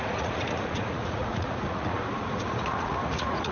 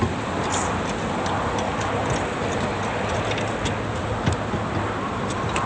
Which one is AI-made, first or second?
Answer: first